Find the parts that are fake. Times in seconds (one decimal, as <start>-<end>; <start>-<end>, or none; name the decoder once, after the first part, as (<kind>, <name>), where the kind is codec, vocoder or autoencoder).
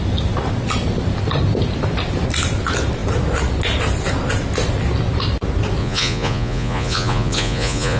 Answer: 5.8-8.0 (vocoder, Vocos)